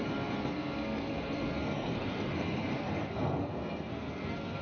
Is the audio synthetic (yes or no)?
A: yes